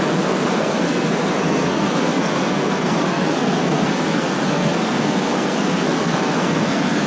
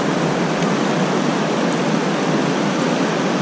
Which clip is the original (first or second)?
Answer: second